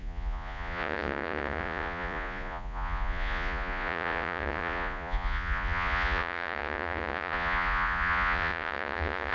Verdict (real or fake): fake